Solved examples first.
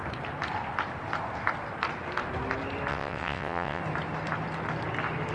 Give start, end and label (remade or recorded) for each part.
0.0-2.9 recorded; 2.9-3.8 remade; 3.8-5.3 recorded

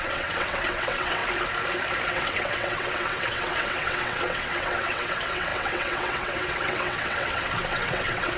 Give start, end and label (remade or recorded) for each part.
0.0-1.2 remade; 1.2-2.1 recorded; 2.1-8.4 remade